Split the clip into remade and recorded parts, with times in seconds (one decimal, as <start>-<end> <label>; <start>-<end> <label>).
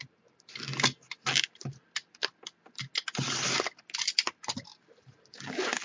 0.0-5.8 recorded